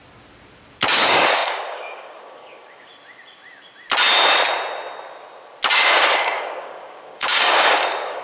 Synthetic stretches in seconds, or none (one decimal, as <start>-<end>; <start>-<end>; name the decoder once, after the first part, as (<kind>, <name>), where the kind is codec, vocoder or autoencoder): 0.9-2.9 (codec, DAC); 5.8-8.2